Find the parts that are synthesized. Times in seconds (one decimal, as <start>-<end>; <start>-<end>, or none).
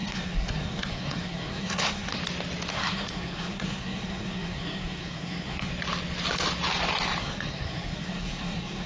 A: 0.0-2.2; 2.7-5.7; 7.2-8.9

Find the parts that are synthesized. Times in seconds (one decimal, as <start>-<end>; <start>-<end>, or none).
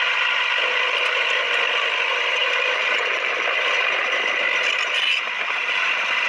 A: none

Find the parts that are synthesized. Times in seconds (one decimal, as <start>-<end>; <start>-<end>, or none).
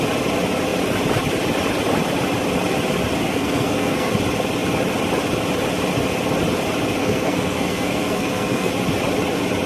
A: 3.3-4.1; 7.0-8.7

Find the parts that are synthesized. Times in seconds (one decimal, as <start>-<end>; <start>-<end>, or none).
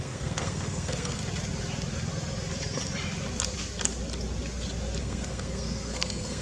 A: 0.0-1.2; 5.0-6.4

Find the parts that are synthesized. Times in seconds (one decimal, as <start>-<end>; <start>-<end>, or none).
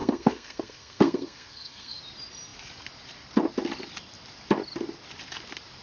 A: 0.0-2.0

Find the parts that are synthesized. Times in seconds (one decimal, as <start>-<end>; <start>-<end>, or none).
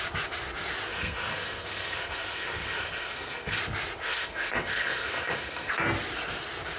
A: 0.9-3.6; 4.0-5.7